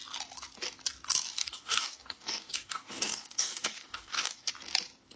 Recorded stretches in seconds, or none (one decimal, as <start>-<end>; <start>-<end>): 0.0-1.4; 4.5-5.2